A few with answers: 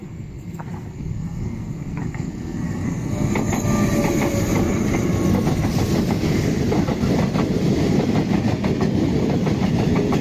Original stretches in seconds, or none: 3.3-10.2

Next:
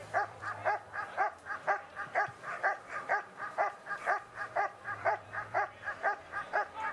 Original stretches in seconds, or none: 0.6-2.5

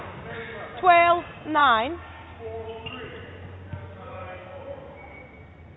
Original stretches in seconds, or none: 0.0-5.8

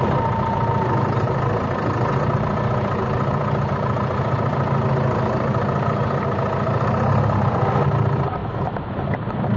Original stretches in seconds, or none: 0.0-9.6

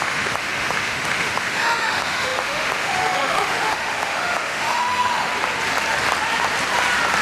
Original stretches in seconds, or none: 5.3-7.2

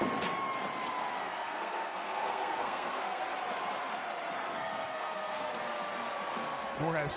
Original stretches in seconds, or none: 0.0-1.2; 3.2-4.5; 5.5-7.2

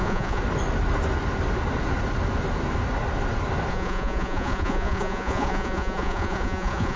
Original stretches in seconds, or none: 0.4-3.7